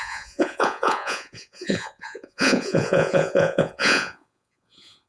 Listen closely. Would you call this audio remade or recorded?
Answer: remade